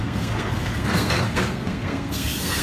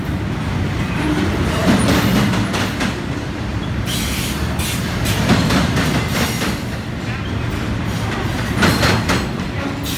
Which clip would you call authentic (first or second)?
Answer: second